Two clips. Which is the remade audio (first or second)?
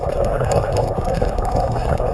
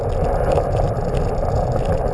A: first